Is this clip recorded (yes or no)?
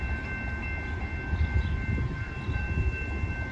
yes